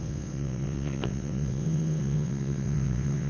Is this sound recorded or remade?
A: remade